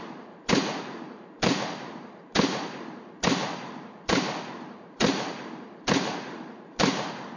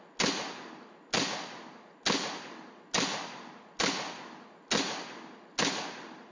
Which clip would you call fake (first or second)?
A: first